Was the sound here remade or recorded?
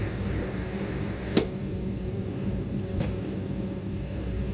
remade